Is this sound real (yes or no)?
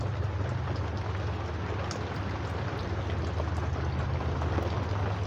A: yes